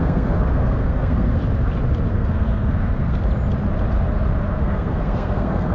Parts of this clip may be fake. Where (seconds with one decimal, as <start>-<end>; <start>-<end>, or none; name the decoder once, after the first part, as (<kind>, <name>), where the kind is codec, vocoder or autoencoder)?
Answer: 0.0-1.4 (codec, SNAC); 2.1-3.2; 4.6-5.7